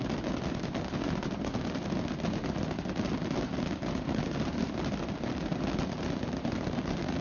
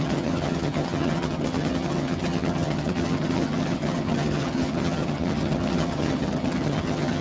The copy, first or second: second